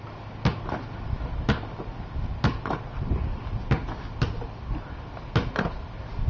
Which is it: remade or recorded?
recorded